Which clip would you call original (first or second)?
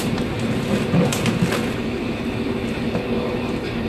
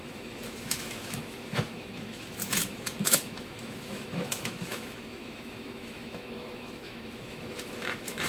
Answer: first